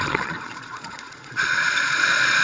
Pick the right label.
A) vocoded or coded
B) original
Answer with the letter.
A